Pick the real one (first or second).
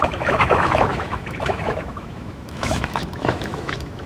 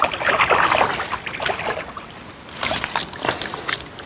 second